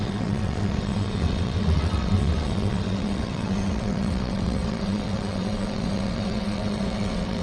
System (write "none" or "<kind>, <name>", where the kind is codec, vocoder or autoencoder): vocoder, WaveNeXt